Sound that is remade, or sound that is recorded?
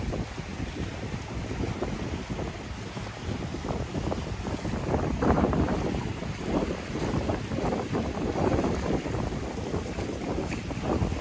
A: recorded